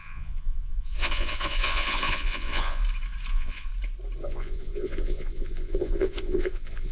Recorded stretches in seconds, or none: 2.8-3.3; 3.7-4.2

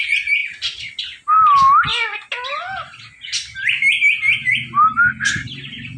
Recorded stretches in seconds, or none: 0.0-6.0

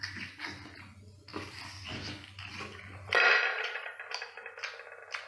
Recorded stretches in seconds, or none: 0.0-3.5; 4.0-5.3